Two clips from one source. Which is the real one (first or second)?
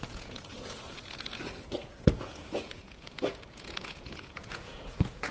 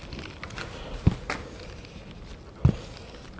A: second